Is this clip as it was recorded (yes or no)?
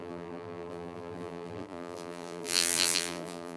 no